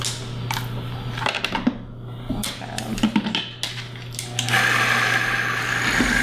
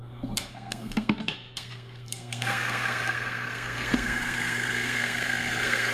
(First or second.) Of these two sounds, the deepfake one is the second